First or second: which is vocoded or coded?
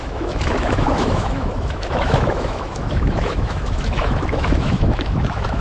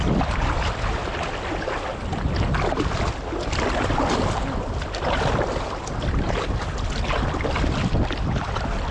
first